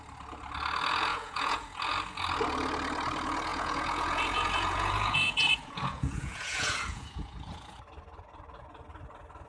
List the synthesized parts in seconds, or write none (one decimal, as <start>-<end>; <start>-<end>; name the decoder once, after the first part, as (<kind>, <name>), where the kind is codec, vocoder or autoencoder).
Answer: 1.1-1.8 (vocoder, Vocos); 3.5-7.8